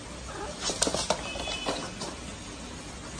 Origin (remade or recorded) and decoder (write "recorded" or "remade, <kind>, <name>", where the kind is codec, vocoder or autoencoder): recorded